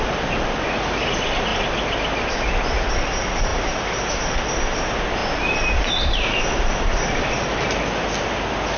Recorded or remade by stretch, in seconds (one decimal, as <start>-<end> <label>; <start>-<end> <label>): 0.0-8.8 recorded

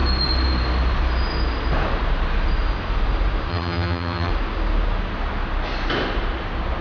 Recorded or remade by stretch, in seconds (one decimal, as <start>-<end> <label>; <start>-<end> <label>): 0.0-3.5 recorded; 3.5-4.3 remade; 4.3-6.8 recorded

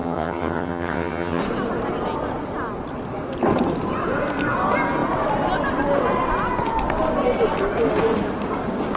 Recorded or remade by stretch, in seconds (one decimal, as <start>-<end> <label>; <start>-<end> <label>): 0.0-1.4 remade; 1.4-9.0 recorded